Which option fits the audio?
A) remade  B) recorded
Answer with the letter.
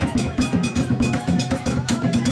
A